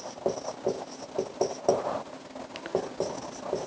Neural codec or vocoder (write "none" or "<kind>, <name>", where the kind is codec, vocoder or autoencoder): none